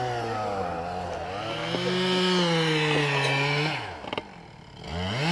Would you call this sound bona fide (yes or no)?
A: yes